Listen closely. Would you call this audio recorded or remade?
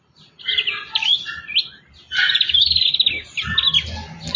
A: recorded